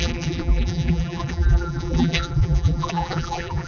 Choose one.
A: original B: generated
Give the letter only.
B